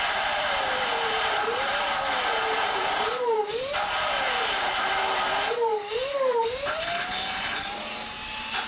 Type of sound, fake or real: fake